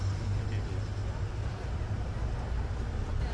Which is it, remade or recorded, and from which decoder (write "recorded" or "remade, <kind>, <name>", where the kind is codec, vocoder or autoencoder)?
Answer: recorded